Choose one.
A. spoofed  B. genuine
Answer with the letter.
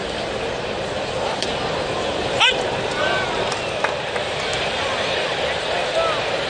A